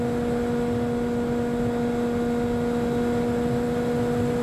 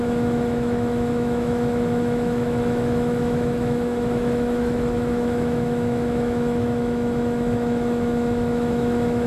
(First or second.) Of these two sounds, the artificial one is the second